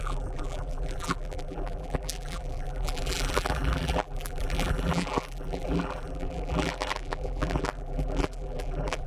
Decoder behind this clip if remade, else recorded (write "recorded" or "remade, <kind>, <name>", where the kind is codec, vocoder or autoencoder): remade, vocoder, BigVGAN v2